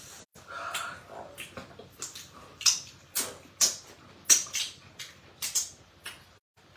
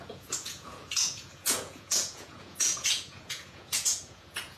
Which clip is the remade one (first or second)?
second